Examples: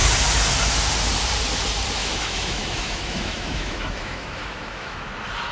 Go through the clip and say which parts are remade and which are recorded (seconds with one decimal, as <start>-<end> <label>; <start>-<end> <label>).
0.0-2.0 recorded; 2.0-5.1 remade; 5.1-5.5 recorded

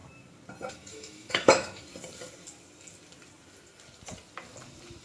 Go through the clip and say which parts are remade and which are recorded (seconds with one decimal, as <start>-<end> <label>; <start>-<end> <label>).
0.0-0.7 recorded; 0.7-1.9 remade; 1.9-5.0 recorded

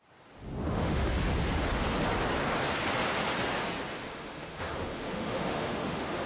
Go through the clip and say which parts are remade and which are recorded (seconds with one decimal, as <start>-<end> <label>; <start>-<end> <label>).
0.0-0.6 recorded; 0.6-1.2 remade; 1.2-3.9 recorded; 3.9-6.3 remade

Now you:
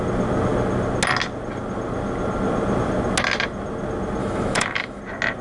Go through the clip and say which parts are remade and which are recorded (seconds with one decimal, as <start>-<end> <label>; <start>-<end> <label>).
0.0-4.2 recorded; 4.2-5.0 remade; 5.0-5.4 recorded

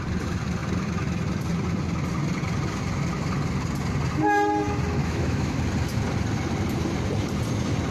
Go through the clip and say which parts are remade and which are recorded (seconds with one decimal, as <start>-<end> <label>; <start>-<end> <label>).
0.0-5.0 recorded; 5.0-5.6 remade; 5.6-7.9 recorded